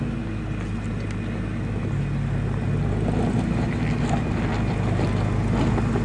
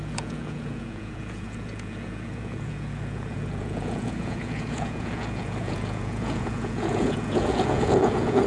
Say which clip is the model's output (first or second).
second